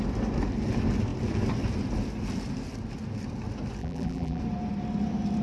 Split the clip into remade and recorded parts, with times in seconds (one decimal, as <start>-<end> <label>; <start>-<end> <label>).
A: 0.0-3.8 recorded; 3.8-4.4 remade; 4.4-5.4 recorded